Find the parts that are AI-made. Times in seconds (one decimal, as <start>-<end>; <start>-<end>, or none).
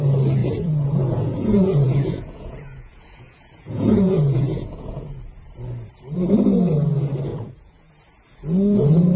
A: 0.4-5.2; 7.3-7.9